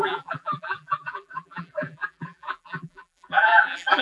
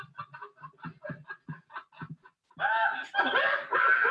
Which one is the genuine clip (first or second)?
second